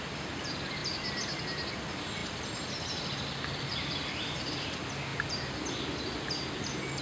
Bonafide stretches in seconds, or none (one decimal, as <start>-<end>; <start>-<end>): 0.0-7.0